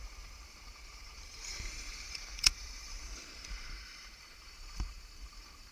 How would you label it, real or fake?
fake